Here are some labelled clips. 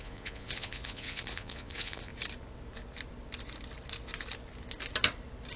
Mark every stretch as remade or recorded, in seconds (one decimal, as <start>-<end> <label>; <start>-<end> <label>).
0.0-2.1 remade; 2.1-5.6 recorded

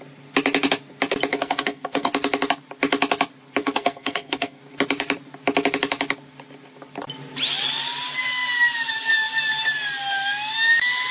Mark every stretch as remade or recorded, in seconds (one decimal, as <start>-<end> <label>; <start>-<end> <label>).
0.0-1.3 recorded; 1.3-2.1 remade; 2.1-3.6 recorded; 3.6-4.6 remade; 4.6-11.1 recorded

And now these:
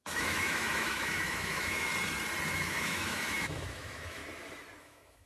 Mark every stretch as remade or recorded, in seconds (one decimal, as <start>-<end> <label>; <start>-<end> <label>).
0.0-1.9 remade; 1.9-2.5 recorded; 2.5-4.2 remade; 4.2-4.8 recorded; 4.8-5.3 remade

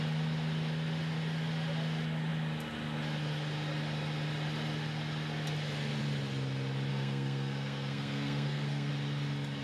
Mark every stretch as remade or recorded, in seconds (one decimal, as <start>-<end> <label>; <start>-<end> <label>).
0.0-6.9 recorded; 6.9-8.9 remade; 8.9-9.6 recorded

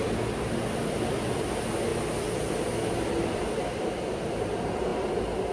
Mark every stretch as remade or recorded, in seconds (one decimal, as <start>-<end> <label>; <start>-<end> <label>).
0.0-5.5 recorded

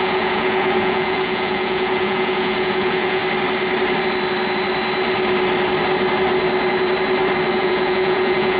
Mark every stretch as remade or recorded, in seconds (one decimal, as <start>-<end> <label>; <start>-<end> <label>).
0.0-3.2 remade; 3.2-7.5 recorded; 7.5-8.6 remade